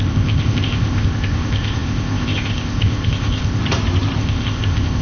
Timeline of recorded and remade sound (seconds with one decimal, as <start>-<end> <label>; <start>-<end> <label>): 0.0-3.6 remade; 3.6-4.2 recorded; 4.2-5.0 remade